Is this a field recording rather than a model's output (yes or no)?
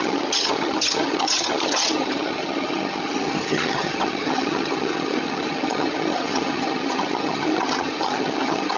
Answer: no